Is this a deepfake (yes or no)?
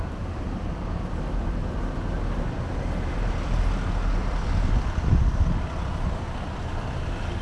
no